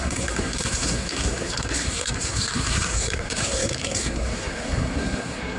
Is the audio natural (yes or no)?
no